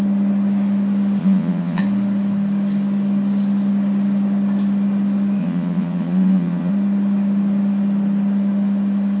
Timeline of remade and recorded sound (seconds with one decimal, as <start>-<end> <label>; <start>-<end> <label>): 0.0-1.2 recorded; 1.2-1.8 remade; 1.8-5.4 recorded; 5.4-6.7 remade; 6.7-9.2 recorded